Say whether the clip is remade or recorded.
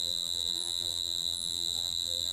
remade